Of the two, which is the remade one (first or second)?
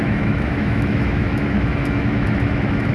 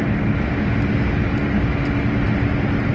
first